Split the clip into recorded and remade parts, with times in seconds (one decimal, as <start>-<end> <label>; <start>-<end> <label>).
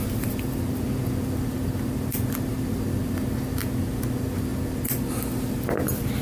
0.0-6.2 recorded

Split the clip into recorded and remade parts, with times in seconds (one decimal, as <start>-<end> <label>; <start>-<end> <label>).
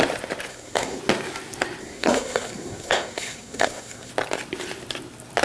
0.0-0.5 recorded; 0.5-1.0 remade; 1.0-1.8 recorded; 1.8-4.1 remade; 4.1-5.4 recorded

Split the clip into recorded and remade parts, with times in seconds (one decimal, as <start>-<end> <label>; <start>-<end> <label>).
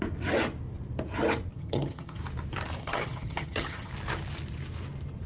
0.0-1.5 recorded; 1.5-2.2 remade; 2.2-2.8 recorded; 2.8-3.9 remade; 3.9-5.3 recorded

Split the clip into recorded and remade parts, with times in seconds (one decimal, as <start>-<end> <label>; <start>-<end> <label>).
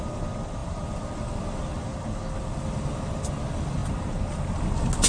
0.0-5.1 recorded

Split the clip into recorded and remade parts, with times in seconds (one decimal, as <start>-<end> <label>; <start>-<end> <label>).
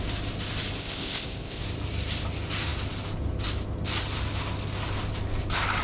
0.0-0.8 recorded; 0.8-1.6 remade; 1.6-5.8 recorded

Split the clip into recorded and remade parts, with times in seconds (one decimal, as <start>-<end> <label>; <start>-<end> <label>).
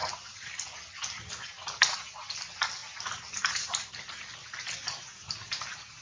0.0-6.0 recorded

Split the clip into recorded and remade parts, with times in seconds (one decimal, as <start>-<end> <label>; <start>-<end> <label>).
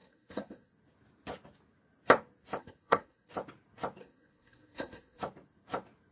0.0-0.7 remade; 0.7-2.6 recorded; 2.6-3.3 remade; 3.3-4.0 recorded; 4.0-5.2 remade; 5.2-6.1 recorded